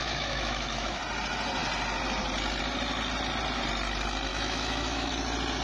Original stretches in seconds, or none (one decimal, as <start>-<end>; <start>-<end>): 1.0-4.3; 5.1-5.6